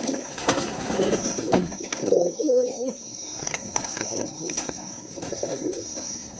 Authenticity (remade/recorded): remade